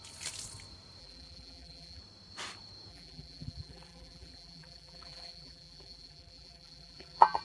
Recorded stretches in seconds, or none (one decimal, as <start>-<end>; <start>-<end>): 0.0-1.0; 2.0-2.9